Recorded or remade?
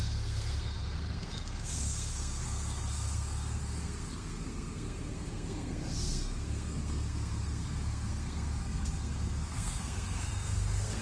remade